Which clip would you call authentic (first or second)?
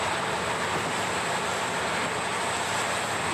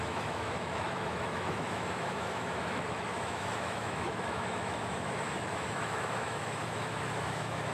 first